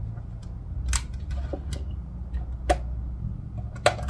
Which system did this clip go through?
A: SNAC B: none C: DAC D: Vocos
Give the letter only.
B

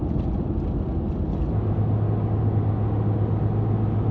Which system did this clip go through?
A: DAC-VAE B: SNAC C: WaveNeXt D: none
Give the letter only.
D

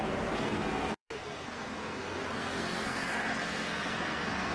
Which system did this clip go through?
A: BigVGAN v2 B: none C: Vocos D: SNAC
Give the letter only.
D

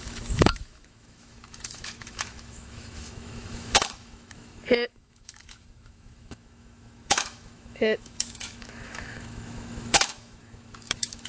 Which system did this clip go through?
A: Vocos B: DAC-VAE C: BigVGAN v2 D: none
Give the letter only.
B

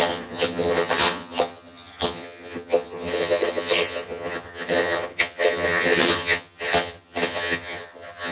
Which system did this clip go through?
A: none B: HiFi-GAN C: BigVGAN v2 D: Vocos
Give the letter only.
B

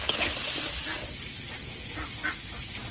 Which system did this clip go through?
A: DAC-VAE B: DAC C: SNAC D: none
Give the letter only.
D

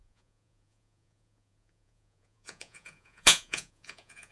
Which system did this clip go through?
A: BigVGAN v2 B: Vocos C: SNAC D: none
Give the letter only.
B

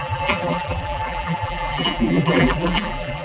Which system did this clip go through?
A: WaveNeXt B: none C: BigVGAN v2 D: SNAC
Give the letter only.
C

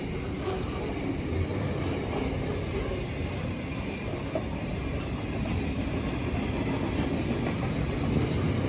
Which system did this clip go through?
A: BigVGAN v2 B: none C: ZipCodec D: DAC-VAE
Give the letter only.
B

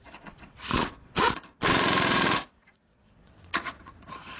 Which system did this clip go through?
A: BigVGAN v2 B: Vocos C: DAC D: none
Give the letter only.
B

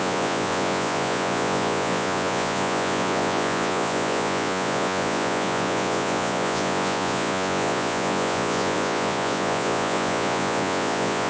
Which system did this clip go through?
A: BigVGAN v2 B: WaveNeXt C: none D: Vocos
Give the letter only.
D